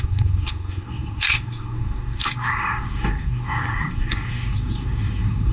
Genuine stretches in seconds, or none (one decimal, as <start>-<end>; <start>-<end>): none